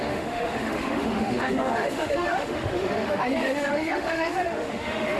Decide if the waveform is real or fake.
fake